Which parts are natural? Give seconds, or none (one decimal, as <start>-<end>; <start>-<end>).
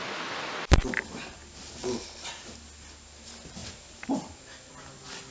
0.0-5.3